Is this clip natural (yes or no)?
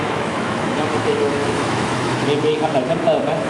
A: no